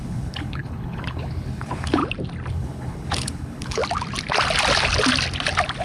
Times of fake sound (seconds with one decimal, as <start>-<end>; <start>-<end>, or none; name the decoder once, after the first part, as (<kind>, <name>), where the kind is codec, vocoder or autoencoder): 0.0-2.0 (codec, HILCodec); 2.5-3.8